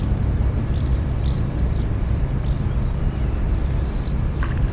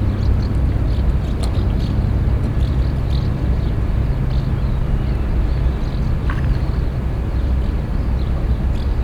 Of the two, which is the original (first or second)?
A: second